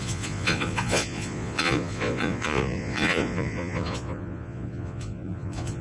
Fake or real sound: fake